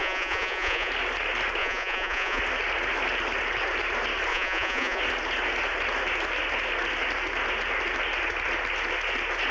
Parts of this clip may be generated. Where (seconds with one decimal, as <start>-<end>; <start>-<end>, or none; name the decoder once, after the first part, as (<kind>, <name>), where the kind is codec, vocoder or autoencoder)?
0.0-0.9 (vocoder, Vocos); 1.6-2.4; 4.3-5.0